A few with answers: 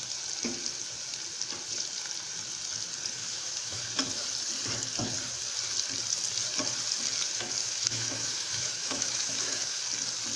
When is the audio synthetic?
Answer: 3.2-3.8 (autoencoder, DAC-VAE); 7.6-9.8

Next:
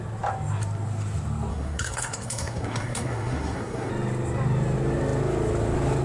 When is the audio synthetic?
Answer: 1.5-3.9 (codec, SNAC)